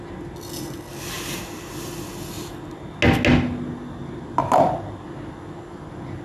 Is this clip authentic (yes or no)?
yes